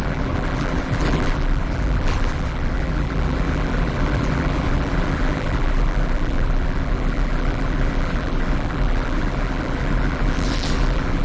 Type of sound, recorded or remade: remade